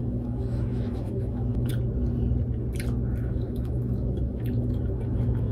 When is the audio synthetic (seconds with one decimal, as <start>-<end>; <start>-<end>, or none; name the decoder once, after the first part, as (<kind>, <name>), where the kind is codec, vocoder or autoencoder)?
0.0-1.7 (autoencoder, DAC-VAE); 3.2-5.5

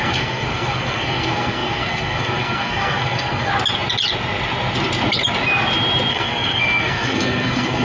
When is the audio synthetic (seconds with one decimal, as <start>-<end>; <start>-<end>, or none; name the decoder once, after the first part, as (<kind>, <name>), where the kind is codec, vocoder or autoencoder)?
0.0-3.5 (codec, SNAC); 6.1-7.8

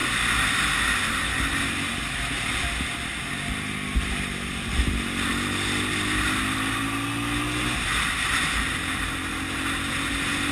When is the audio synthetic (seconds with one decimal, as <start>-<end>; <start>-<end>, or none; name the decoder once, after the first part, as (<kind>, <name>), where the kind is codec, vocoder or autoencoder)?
none

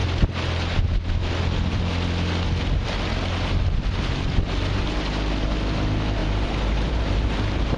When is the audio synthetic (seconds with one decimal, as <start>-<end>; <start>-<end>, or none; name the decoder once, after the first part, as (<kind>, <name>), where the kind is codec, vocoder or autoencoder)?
6.2-7.3 (vocoder, BigVGAN v2)

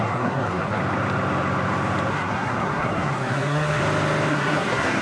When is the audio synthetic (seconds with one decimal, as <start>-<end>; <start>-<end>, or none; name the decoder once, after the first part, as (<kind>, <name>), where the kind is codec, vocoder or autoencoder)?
0.0-0.8 (codec, SNAC); 2.1-3.8; 4.3-5.0